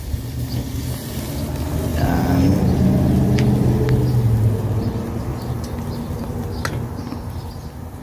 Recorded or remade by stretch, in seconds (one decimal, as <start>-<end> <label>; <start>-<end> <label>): 0.0-8.0 recorded